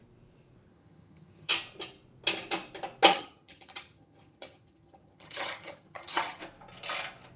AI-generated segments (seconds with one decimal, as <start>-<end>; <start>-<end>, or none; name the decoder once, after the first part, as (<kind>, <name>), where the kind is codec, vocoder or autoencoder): 0.7-1.5 (vocoder, HiFi-GAN); 3.1-6.4